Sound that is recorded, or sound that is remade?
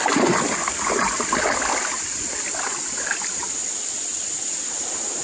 recorded